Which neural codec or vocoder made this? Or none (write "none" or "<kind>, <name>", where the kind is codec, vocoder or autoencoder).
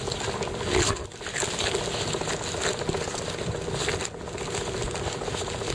none